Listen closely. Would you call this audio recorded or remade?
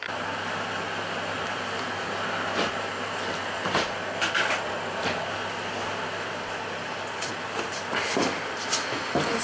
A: recorded